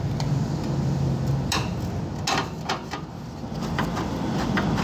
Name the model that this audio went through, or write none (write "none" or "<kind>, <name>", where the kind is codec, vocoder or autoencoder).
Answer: none